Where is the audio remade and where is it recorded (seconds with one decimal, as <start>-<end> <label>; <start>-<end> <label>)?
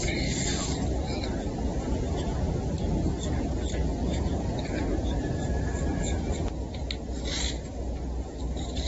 0.0-1.7 recorded; 1.7-2.5 remade; 2.5-8.9 recorded